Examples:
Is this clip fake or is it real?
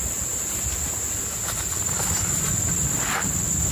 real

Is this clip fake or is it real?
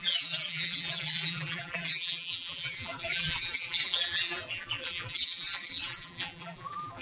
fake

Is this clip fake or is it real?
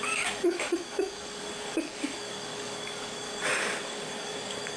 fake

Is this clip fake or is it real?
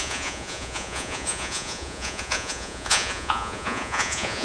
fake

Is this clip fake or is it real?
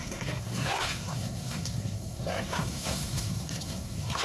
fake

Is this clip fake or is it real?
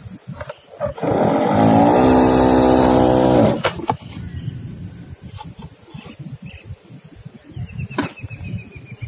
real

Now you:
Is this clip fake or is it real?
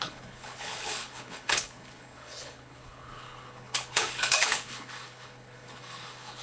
fake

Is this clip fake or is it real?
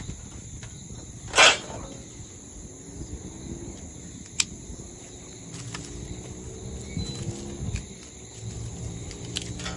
real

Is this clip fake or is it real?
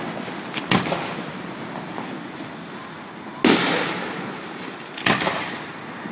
real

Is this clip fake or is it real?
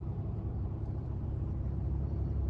fake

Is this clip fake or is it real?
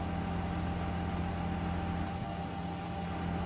real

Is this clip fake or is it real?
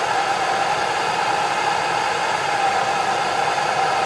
real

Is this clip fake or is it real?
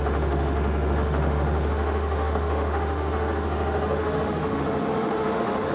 fake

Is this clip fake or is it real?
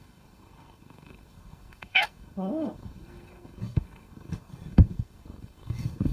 fake